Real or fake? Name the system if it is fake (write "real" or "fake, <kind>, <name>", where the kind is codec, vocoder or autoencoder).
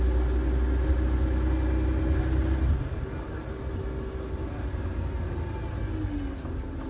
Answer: real